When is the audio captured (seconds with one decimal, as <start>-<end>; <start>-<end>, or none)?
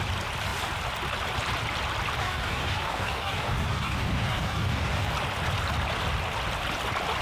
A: 0.0-2.2; 5.1-7.2